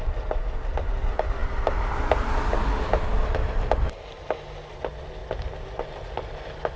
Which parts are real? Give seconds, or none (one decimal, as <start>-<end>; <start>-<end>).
0.0-6.8